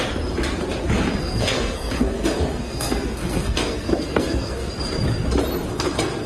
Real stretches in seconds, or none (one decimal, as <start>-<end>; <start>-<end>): 0.0-1.2; 4.7-5.7